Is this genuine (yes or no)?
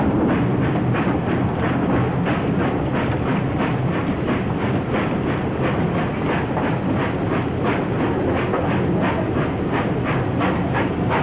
yes